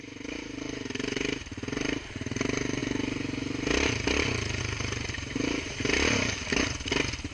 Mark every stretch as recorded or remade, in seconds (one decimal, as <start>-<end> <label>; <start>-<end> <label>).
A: 0.0-7.3 remade